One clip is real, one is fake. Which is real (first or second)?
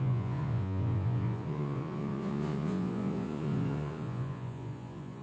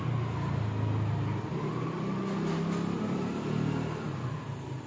second